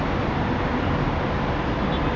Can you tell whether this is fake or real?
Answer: real